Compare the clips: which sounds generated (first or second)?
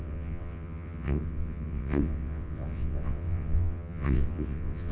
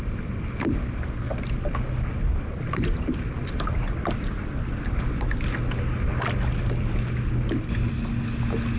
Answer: first